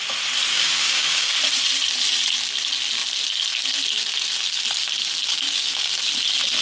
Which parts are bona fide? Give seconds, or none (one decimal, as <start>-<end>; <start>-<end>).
0.0-0.5; 1.3-5.3; 5.9-6.6